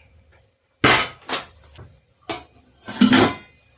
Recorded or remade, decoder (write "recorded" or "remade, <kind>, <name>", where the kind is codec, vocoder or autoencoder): recorded